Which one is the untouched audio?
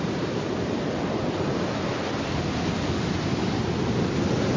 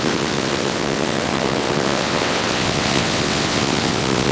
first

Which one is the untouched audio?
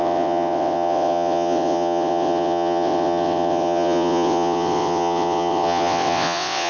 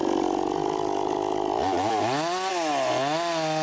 second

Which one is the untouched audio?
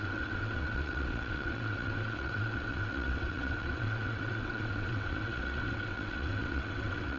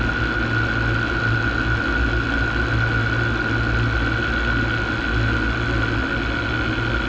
second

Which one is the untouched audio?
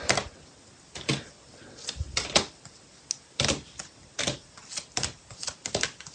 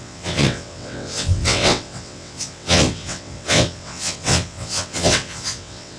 first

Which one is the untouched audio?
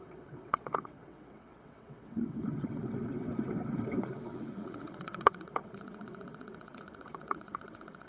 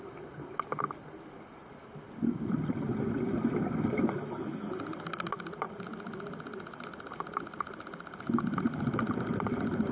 second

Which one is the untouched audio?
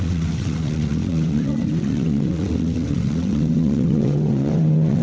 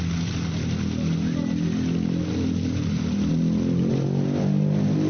second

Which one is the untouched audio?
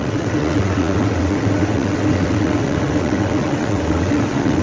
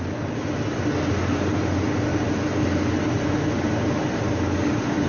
second